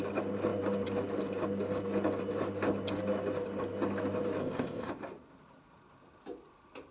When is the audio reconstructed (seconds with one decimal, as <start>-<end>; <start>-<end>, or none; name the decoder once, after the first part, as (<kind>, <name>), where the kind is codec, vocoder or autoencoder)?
4.4-4.9 (codec, ZipCodec)